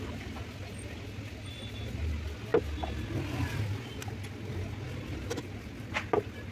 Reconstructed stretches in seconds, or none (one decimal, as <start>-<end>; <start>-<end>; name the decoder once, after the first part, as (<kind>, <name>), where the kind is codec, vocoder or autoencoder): none